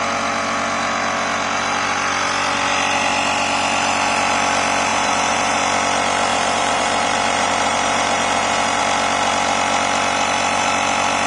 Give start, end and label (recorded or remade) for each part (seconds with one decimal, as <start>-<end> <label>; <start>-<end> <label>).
0.0-4.9 recorded; 4.9-5.6 remade; 5.6-6.3 recorded; 6.3-8.8 remade; 8.8-11.3 recorded